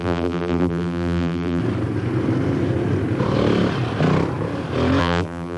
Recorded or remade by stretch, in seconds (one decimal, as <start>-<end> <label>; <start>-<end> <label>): 0.0-1.6 remade; 1.6-5.0 recorded; 5.0-5.6 remade